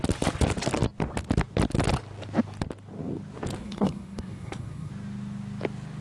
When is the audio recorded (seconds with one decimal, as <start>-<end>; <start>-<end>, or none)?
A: 0.0-3.6; 4.9-6.0